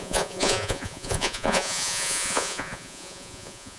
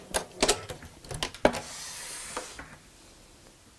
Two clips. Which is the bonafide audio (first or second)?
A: second